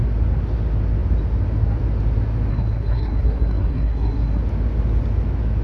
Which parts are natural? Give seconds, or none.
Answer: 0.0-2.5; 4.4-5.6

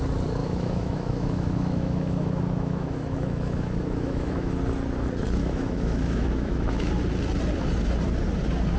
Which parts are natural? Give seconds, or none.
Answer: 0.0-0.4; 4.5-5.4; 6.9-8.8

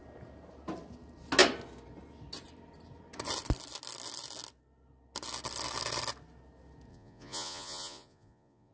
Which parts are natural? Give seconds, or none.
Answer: 0.0-6.9